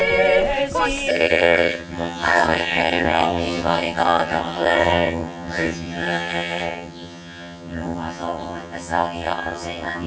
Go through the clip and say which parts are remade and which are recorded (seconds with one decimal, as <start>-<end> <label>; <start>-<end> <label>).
0.0-1.1 recorded; 1.1-10.1 remade